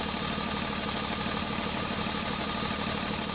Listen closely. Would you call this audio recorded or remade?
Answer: recorded